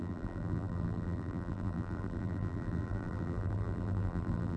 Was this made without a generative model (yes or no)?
no